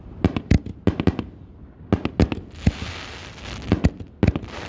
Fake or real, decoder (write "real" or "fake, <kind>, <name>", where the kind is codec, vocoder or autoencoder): real